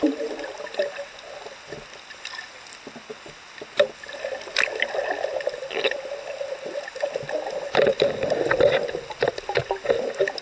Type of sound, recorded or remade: recorded